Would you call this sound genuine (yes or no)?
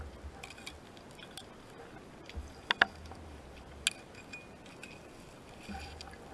yes